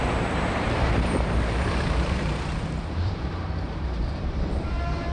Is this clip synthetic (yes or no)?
yes